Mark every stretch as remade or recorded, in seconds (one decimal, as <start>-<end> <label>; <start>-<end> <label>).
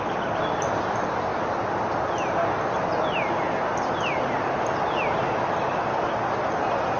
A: 0.0-7.0 recorded